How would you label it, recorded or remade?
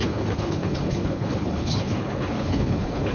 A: remade